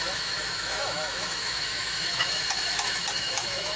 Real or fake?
fake